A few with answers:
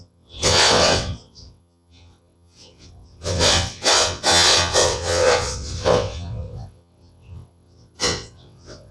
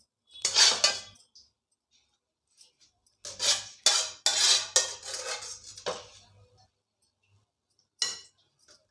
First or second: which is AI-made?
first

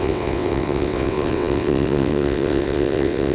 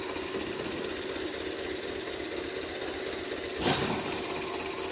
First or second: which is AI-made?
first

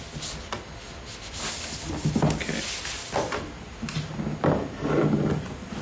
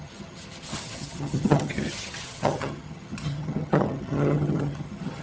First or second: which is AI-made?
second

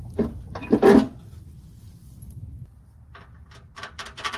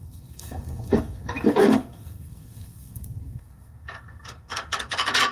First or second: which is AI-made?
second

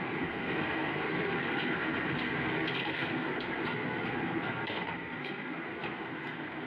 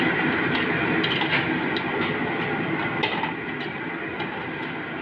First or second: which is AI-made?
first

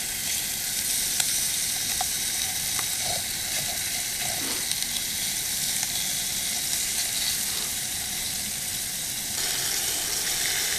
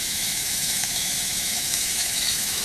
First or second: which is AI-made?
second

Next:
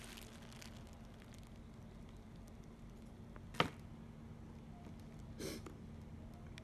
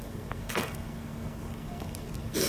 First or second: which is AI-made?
second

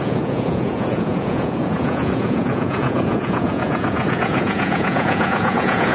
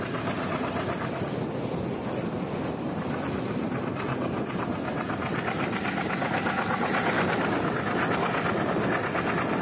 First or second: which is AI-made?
first